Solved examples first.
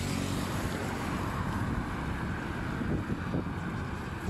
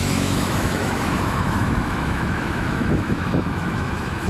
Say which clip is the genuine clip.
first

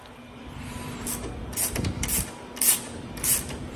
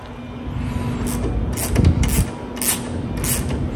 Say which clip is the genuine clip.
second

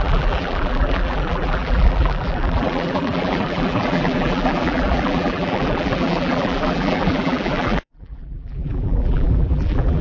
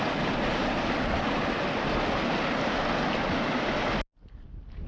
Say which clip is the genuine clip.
second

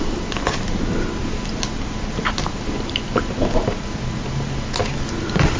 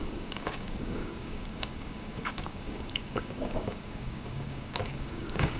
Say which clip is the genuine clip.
first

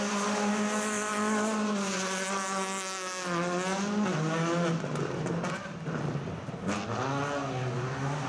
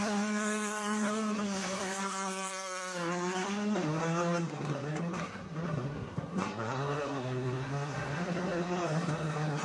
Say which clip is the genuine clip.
first